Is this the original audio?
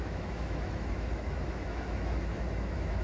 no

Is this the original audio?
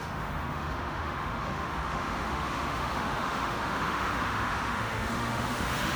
no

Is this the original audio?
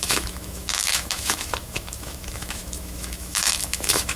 no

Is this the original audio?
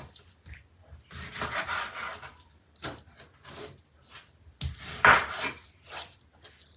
yes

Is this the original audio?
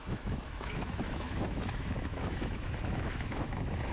no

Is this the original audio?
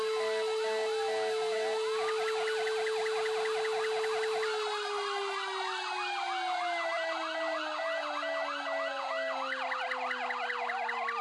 yes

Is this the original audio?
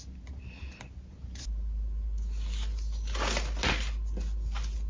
yes